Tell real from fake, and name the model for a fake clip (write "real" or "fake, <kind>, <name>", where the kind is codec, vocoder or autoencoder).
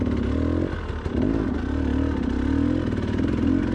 real